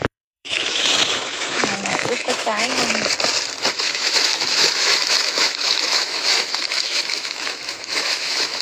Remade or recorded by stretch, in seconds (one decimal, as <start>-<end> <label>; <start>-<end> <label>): 0.0-2.7 remade; 2.7-3.7 recorded; 3.7-8.6 remade

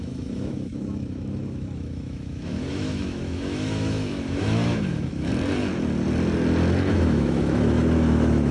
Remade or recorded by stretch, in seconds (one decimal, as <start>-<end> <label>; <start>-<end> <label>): 0.0-5.3 remade; 5.3-6.9 recorded; 6.9-8.5 remade

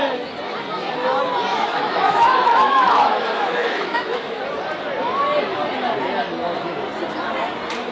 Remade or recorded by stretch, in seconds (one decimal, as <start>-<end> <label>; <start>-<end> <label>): 0.0-1.5 recorded; 1.5-4.4 remade; 4.4-7.9 recorded

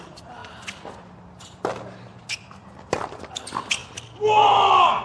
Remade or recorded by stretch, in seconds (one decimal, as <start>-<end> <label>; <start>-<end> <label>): 0.0-5.0 recorded

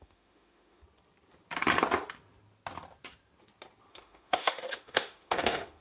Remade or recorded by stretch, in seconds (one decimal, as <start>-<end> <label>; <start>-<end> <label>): 0.0-0.8 remade; 0.8-3.9 recorded; 3.9-5.8 remade

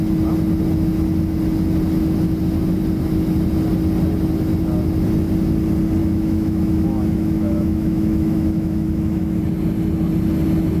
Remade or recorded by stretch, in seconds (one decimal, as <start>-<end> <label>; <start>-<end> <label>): 0.0-6.0 recorded; 6.0-9.4 remade; 9.4-10.8 recorded

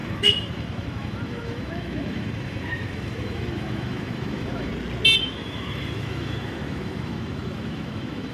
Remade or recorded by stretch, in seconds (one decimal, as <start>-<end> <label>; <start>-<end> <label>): 0.0-4.7 remade; 4.7-5.2 recorded; 5.2-8.3 remade

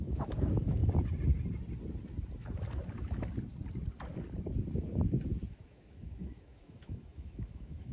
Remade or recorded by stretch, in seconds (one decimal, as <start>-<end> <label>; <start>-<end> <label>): 0.0-0.8 remade; 0.8-5.5 recorded; 5.5-7.9 remade